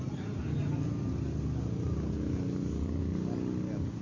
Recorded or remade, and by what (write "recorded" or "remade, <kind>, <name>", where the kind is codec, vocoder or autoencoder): recorded